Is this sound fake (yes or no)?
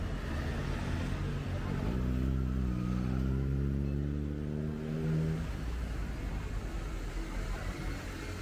no